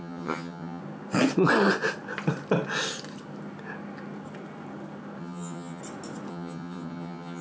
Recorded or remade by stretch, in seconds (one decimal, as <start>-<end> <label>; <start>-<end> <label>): 0.0-0.8 remade; 0.8-5.2 recorded; 5.2-5.8 remade; 5.8-6.3 recorded; 6.3-7.4 remade